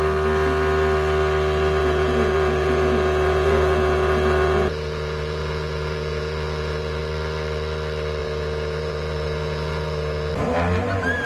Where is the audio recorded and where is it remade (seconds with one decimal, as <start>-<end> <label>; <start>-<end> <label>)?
0.0-1.8 recorded; 1.8-7.0 remade; 7.0-8.2 recorded; 8.2-10.3 remade; 10.3-11.3 recorded